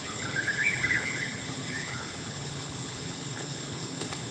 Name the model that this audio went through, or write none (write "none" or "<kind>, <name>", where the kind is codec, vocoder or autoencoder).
codec, HILCodec